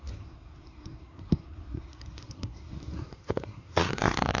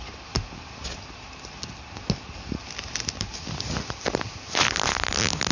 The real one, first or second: second